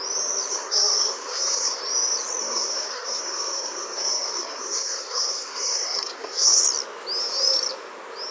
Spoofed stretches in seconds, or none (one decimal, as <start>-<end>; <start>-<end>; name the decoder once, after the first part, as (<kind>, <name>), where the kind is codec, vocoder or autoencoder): 0.5-1.8 (codec, SNAC); 2.4-6.6